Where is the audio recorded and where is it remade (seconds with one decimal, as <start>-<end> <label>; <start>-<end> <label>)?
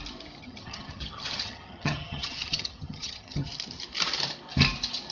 0.0-0.4 recorded; 0.4-3.5 remade; 3.5-5.1 recorded